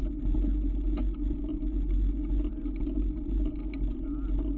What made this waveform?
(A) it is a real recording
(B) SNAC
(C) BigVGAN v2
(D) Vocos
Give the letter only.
A